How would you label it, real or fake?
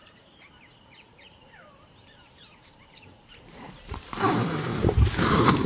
fake